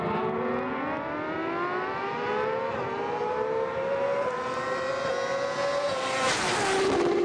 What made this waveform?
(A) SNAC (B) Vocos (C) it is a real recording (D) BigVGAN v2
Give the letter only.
C